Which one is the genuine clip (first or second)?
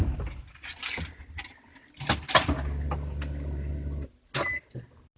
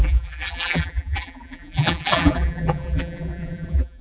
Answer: first